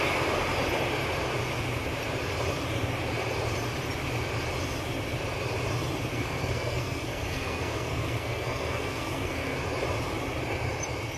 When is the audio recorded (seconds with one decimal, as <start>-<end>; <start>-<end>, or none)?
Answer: 0.0-6.1; 9.6-11.2